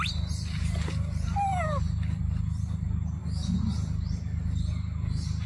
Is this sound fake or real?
real